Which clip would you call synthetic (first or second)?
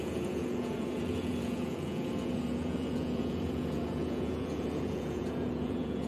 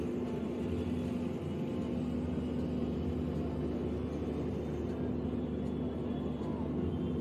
first